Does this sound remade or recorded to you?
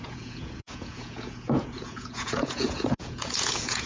remade